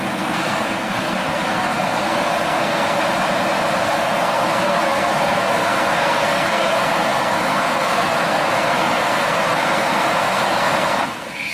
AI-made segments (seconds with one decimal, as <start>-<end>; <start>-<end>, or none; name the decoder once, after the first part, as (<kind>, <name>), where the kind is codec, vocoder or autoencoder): 0.0-3.0 (codec, SNAC); 3.8-11.5